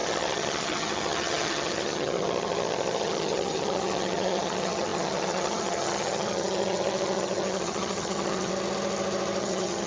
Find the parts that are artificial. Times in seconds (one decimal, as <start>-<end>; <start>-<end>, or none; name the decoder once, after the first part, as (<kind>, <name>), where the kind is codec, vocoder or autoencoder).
0.0-8.5 (vocoder, HiFi-GAN); 9.4-9.9